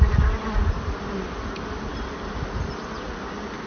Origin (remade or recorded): recorded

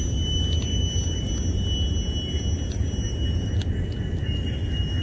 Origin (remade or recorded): recorded